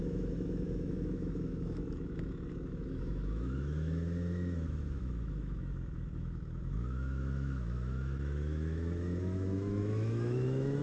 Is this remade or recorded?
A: remade